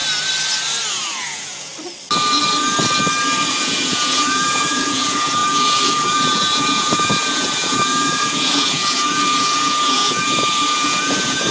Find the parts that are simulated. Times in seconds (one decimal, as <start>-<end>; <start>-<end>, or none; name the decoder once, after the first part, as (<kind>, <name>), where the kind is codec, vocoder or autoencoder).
0.9-1.7 (vocoder, Vocos); 3.5-11.5